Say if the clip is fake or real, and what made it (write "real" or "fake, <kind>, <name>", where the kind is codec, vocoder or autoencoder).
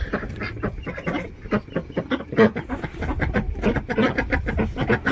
real